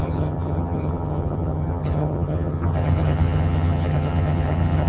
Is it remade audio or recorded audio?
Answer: remade